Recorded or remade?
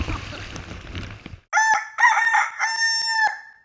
recorded